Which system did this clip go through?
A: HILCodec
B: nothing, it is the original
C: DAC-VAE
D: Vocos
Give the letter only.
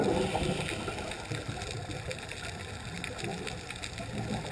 B